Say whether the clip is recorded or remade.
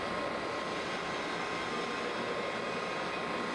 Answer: recorded